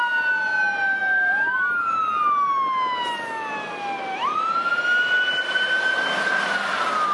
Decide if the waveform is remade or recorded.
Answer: recorded